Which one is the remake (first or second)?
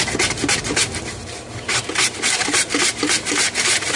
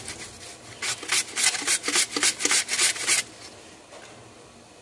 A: first